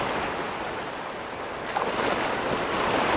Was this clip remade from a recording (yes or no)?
no